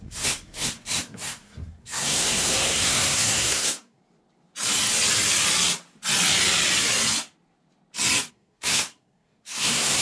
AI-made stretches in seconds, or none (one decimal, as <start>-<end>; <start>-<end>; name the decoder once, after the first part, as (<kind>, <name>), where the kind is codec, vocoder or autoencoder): 0.0-4.0 (codec, SNAC); 8.3-10.0